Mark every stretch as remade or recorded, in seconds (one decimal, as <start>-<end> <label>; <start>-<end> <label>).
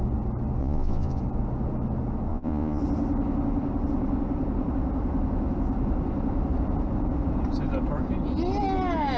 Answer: 0.0-0.6 recorded; 0.6-1.2 remade; 1.2-2.3 recorded; 2.3-2.8 remade; 2.8-9.2 recorded